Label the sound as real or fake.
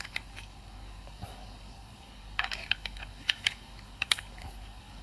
fake